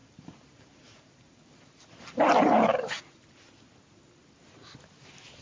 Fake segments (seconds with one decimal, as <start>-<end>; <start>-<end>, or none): 0.0-3.0